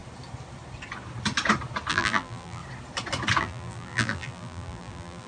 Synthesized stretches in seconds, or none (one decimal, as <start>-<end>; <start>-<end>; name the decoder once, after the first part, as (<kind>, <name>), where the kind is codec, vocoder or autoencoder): 1.9-2.6 (vocoder, BigVGAN v2); 3.4-5.3